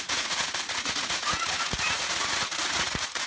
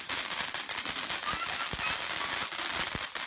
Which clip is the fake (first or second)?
first